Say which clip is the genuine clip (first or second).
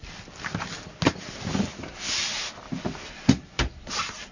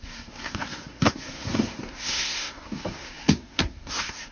first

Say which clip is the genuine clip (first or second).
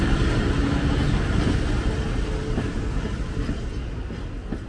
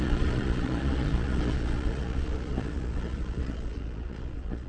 first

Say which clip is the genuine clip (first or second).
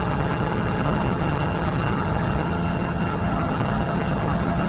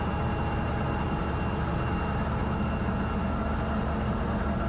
second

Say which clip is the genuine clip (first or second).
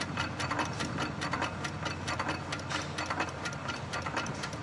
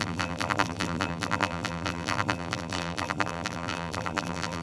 first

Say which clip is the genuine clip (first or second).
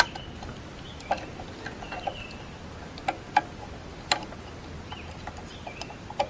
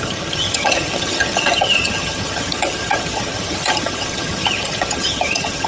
first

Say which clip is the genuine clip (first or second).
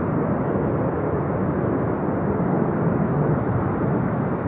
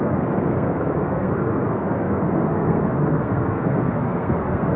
first